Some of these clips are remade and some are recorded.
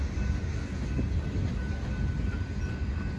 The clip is recorded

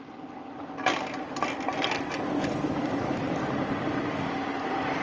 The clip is recorded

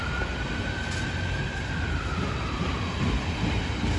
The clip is recorded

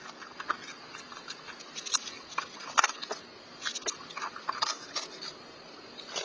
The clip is recorded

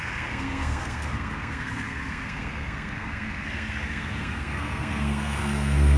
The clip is remade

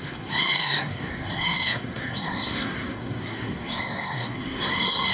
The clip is remade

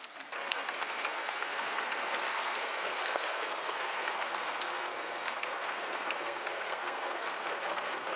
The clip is remade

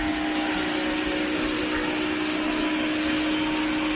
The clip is recorded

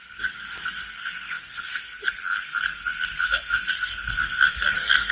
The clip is remade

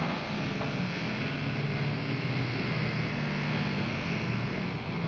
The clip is remade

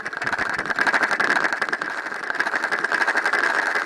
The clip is recorded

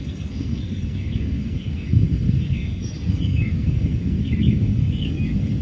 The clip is remade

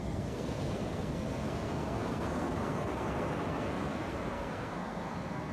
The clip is remade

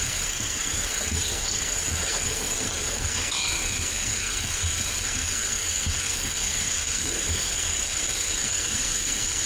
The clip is remade